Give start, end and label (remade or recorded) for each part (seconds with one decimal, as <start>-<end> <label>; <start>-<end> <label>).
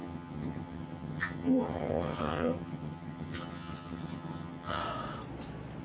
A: 0.0-4.8 remade; 4.8-5.8 recorded